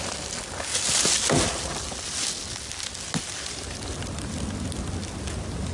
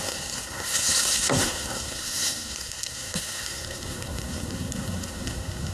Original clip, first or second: first